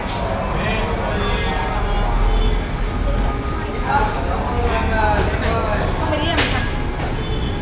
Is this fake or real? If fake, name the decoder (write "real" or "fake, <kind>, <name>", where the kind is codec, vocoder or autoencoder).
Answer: real